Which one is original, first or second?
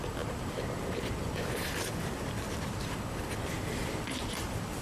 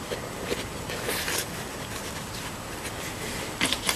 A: second